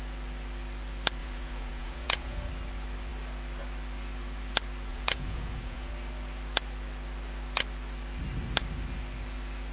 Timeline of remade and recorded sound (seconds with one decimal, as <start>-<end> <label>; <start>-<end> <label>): 0.0-1.2 recorded; 1.2-2.5 remade; 2.5-4.9 recorded; 4.9-5.9 remade; 5.9-9.7 recorded